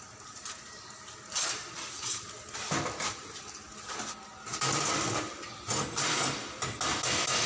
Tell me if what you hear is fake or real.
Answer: real